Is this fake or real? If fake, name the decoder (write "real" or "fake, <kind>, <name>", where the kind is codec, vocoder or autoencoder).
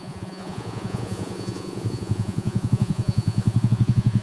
fake, vocoder, Vocos